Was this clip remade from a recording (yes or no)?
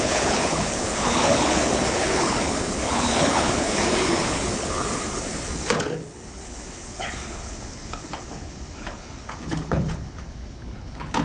yes